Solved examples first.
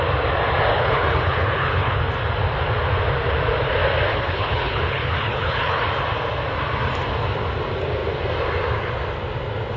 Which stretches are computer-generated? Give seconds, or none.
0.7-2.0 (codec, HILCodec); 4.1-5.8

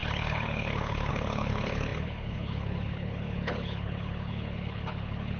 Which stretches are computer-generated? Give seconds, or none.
0.0-5.4 (codec, HILCodec)

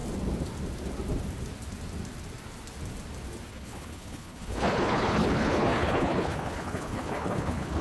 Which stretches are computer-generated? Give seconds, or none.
3.5-7.8 (codec, HILCodec)

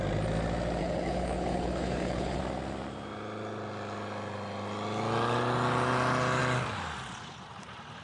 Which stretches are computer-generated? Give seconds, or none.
0.8-2.4 (codec, HILCodec)

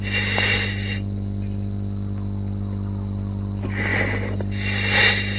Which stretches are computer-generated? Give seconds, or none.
none

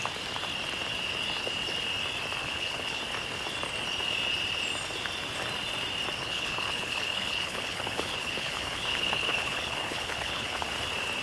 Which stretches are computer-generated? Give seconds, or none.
2.4-3.0 (codec, HILCodec); 6.2-10.7

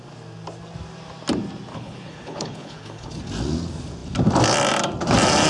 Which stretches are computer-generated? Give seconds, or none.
1.7-3.2 (codec, HILCodec)